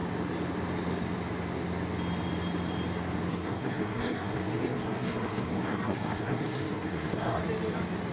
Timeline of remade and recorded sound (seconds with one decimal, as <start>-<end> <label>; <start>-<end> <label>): 0.0-3.3 recorded; 3.3-7.4 remade; 7.4-8.1 recorded